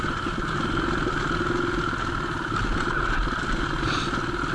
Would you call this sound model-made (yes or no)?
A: no